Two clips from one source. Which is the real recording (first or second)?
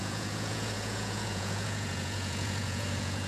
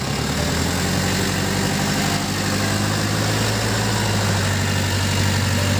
second